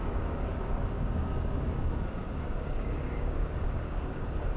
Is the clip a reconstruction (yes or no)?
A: yes